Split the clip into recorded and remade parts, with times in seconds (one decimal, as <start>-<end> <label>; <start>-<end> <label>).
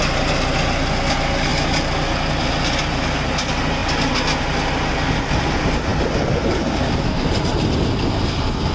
0.0-8.7 recorded